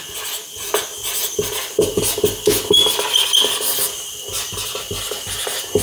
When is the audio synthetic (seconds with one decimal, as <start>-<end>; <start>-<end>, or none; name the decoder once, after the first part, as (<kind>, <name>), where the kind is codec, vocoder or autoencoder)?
1.2-4.5 (vocoder, BigVGAN v2)